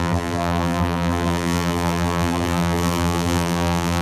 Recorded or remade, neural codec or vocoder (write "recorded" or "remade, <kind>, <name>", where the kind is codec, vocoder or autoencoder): remade, vocoder, BigVGAN v2